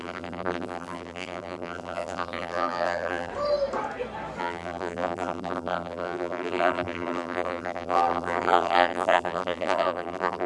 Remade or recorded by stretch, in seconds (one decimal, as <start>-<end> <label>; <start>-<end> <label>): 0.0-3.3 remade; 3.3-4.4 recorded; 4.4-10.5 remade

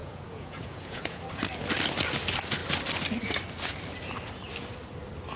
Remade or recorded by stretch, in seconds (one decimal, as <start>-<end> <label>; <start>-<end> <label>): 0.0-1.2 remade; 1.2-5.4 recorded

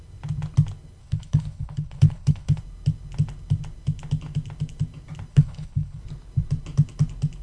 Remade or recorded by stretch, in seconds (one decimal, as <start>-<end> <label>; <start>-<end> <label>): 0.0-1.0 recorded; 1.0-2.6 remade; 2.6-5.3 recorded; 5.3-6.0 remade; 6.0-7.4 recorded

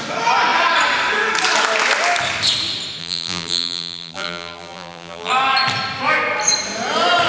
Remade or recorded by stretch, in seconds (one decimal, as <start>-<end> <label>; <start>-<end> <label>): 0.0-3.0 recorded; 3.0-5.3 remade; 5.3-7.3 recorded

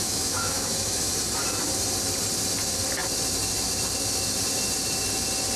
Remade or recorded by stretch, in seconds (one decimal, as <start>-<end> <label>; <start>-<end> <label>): 0.0-1.1 remade; 1.1-5.6 recorded

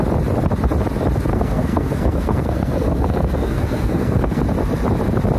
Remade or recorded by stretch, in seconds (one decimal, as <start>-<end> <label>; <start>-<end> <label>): 0.0-1.3 recorded; 1.3-4.4 remade; 4.4-5.4 recorded

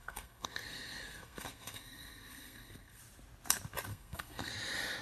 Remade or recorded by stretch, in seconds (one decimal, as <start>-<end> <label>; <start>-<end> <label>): 0.0-3.0 remade; 3.0-3.9 recorded; 3.9-4.5 remade; 4.5-5.0 recorded

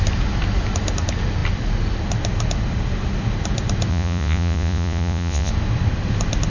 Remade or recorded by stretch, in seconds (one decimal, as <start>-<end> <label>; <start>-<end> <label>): 0.0-3.9 recorded; 3.9-5.5 remade; 5.5-6.5 recorded